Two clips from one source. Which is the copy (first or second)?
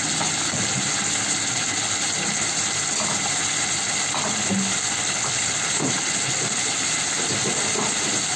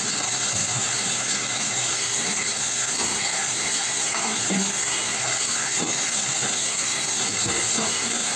second